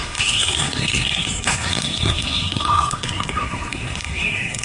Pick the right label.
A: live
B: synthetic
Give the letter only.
B